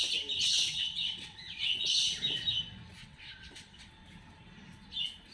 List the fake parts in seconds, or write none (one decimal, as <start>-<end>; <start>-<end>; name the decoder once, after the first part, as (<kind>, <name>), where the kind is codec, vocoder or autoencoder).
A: 0.4-1.9 (vocoder, WaveNeXt); 3.0-3.9